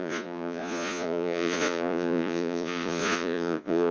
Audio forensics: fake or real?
fake